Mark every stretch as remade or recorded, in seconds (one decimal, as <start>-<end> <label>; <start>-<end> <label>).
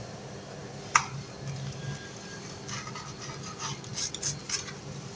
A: 0.0-5.2 recorded